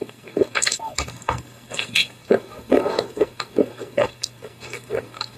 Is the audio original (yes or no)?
no